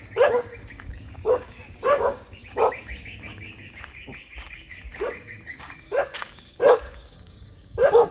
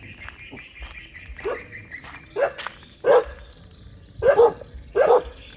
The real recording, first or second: second